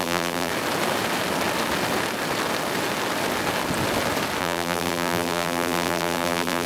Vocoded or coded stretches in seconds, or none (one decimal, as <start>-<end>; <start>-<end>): 0.0-0.5; 4.4-6.7